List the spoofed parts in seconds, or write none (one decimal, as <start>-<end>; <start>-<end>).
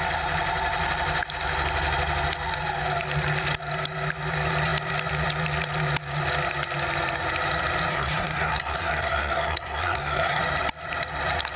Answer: 7.9-10.4